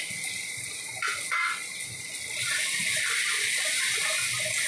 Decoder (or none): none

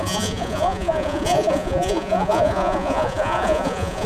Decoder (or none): vocoder, Vocos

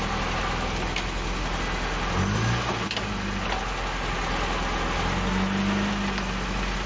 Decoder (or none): none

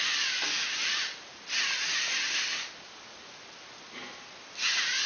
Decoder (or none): none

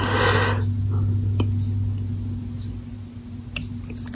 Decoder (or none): none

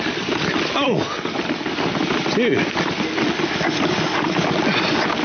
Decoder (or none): none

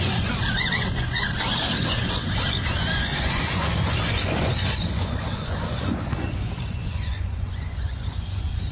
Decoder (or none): vocoder, Vocos